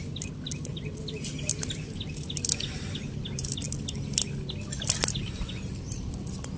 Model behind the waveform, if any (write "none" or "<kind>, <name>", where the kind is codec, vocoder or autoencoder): none